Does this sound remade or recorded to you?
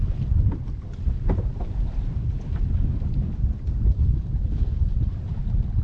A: recorded